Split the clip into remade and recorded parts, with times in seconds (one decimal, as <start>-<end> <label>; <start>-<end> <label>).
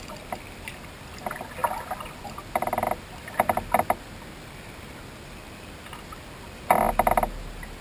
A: 0.0-7.8 recorded